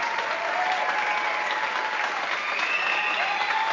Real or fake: real